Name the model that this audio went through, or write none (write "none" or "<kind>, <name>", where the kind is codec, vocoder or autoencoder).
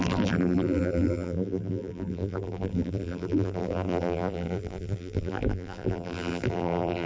vocoder, BigVGAN v2